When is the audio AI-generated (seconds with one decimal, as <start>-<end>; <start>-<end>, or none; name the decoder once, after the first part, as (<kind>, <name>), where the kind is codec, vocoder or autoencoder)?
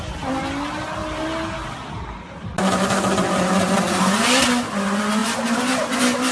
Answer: none